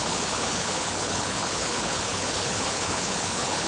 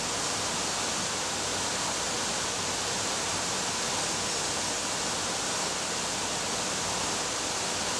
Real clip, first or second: second